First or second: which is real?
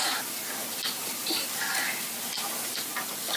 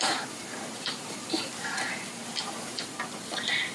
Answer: first